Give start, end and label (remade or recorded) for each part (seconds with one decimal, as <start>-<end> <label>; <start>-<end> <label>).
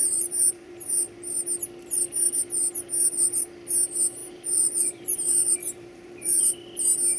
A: 0.0-0.7 remade; 0.7-4.2 recorded; 4.2-6.4 remade; 6.4-7.2 recorded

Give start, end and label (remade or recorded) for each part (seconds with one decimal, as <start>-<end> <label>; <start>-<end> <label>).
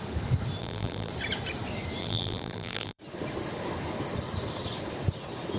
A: 0.0-0.6 recorded; 0.6-1.1 remade; 1.1-2.0 recorded; 2.0-3.0 remade; 3.0-5.6 recorded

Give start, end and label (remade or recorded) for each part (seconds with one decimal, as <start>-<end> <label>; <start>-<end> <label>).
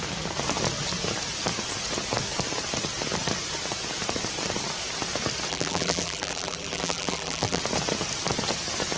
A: 0.0-5.5 recorded; 5.5-7.6 remade; 7.6-9.0 recorded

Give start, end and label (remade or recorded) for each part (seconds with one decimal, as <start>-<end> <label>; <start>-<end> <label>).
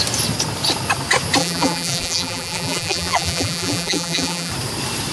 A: 0.0-1.4 recorded; 1.4-4.5 remade; 4.5-5.1 recorded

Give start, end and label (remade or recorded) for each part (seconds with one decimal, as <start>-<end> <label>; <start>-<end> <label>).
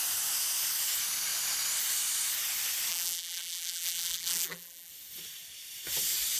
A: 0.0-2.9 recorded; 2.9-4.9 remade; 4.9-6.4 recorded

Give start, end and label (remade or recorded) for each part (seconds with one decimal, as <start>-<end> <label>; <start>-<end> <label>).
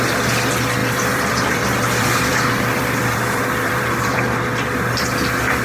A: 0.0-0.8 recorded; 0.8-4.2 remade; 4.2-5.6 recorded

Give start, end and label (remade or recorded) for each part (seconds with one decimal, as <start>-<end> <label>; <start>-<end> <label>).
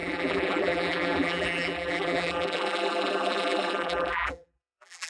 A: 0.0-5.1 remade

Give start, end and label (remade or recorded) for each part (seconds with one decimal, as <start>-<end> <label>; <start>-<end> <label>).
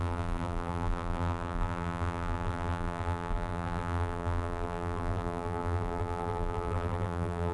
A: 0.0-7.5 remade